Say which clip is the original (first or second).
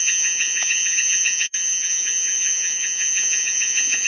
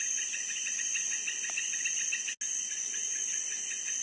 second